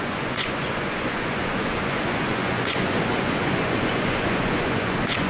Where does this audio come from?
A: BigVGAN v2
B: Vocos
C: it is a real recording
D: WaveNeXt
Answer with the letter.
B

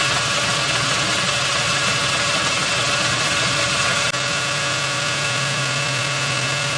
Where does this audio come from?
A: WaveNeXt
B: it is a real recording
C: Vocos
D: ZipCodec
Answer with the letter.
B